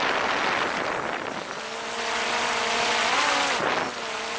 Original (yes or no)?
yes